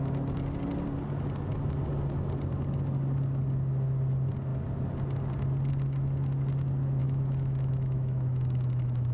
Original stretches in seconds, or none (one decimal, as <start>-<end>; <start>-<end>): 0.0-7.0